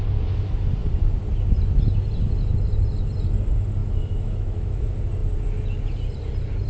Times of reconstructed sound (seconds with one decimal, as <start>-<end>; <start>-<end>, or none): 3.8-4.8